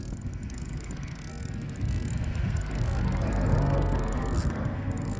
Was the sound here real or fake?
fake